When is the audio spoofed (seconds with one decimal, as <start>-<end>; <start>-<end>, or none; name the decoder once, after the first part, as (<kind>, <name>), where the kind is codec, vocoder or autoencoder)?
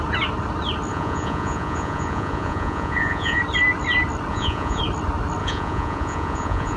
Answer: 0.9-3.4 (vocoder, Vocos); 4.3-4.8; 5.4-6.8